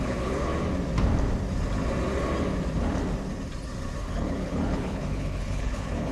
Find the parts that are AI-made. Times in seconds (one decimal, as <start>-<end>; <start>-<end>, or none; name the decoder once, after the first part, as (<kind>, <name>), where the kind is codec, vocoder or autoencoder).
0.0-0.5 (codec, HILCodec); 4.0-6.1